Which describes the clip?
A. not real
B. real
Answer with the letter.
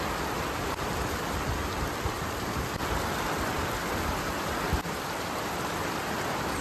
A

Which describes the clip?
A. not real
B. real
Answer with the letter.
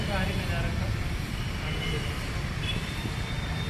B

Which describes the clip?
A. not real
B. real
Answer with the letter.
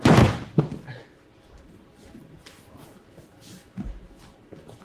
B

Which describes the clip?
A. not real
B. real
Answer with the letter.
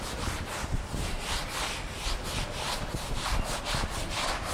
B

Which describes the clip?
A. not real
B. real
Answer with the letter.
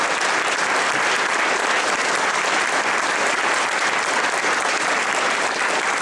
A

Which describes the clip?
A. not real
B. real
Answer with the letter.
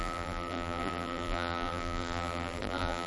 A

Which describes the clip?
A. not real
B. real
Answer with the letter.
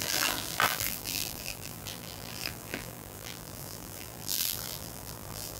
A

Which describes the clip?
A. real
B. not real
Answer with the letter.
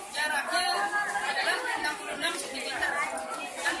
A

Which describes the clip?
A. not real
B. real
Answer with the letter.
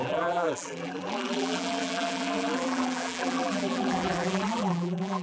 A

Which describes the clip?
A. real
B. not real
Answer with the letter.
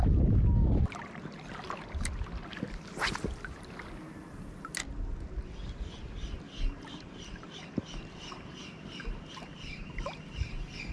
A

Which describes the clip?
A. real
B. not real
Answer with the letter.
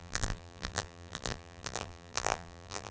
B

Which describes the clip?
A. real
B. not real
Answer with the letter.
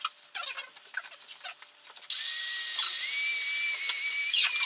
A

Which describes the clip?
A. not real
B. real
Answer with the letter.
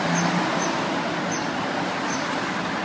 B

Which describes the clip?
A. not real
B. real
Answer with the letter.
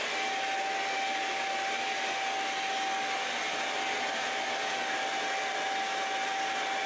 B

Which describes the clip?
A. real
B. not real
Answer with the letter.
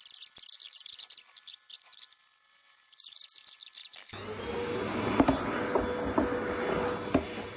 A